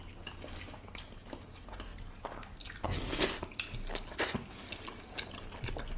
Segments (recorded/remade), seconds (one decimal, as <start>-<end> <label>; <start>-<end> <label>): 0.0-6.0 recorded